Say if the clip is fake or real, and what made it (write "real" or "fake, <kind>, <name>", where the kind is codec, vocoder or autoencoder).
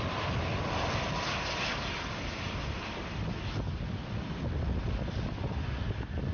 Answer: real